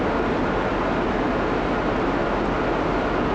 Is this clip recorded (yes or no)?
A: yes